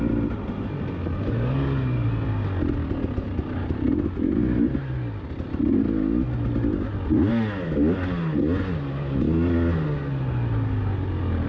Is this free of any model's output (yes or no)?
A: yes